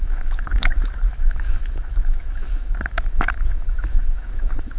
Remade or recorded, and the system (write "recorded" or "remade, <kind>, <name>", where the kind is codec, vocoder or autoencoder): remade, autoencoder, DAC-VAE